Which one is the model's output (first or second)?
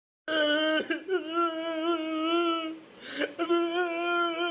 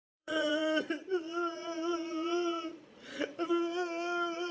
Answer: second